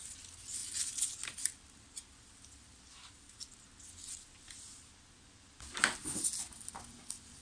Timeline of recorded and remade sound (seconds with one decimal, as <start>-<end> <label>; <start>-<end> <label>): 0.0-7.4 recorded